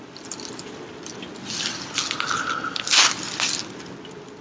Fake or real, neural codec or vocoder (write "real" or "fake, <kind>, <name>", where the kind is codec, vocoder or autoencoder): real